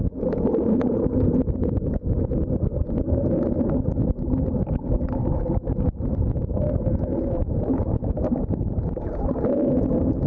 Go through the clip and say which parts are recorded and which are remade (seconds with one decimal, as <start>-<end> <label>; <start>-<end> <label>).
0.0-1.8 remade; 1.8-7.2 recorded; 7.2-9.2 remade; 9.2-10.3 recorded